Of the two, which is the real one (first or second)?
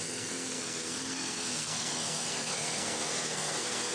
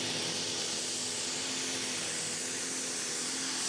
second